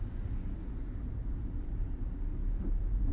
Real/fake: real